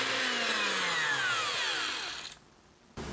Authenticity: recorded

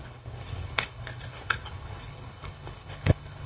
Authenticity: remade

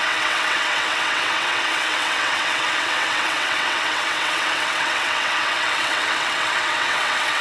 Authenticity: remade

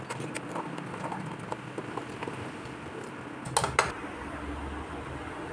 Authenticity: recorded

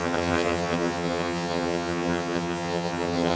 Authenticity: remade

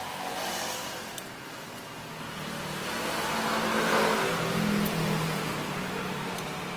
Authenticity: recorded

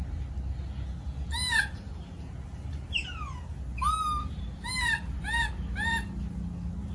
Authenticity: recorded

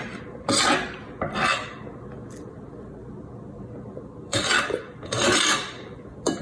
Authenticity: remade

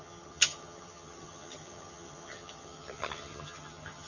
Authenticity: remade